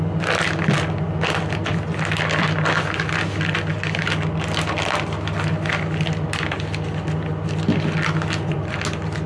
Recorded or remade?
recorded